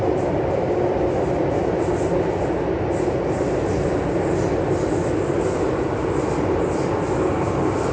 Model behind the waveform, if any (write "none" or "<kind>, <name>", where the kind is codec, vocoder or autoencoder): none